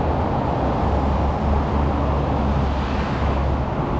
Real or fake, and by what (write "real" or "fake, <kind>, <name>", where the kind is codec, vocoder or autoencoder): real